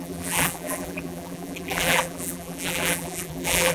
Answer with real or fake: fake